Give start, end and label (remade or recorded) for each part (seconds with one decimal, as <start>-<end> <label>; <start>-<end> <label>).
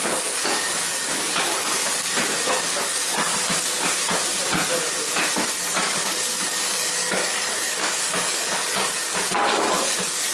0.0-1.8 remade; 1.8-2.7 recorded; 2.7-3.3 remade; 3.3-5.6 recorded; 5.6-10.3 remade